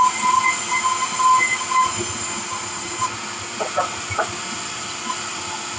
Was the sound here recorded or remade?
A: recorded